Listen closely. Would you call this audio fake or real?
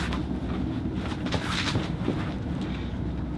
real